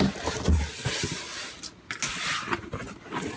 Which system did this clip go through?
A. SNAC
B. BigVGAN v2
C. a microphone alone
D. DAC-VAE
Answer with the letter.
C